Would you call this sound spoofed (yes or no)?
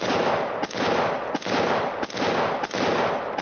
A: no